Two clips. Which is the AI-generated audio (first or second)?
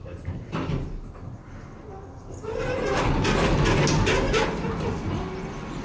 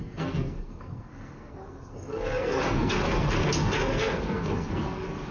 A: second